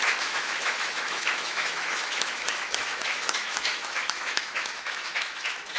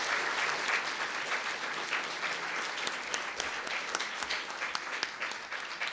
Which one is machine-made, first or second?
first